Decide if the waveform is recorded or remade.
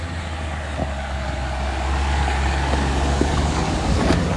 remade